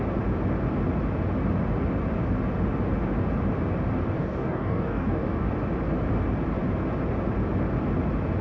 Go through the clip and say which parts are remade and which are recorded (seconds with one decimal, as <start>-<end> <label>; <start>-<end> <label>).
0.0-4.2 recorded; 4.2-5.5 remade; 5.5-8.4 recorded